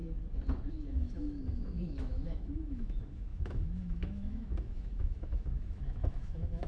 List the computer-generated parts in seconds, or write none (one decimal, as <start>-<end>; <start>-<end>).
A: 0.7-6.7